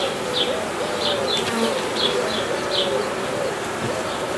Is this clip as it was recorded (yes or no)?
no